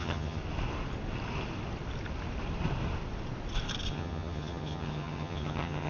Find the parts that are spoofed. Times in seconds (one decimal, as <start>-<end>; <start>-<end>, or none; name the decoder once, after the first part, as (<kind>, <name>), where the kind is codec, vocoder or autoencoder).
0.0-0.4 (vocoder, HiFi-GAN); 3.9-5.9